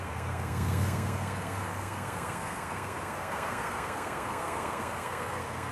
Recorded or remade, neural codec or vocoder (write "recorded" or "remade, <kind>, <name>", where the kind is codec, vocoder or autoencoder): remade, codec, SNAC